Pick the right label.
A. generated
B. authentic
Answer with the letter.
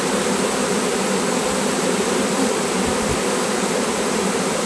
A